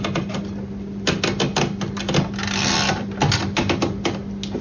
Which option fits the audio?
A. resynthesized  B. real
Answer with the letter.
B